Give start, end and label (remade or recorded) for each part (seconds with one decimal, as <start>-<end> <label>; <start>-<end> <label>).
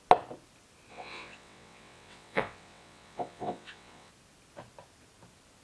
0.0-0.9 recorded; 0.9-4.1 remade; 4.1-5.6 recorded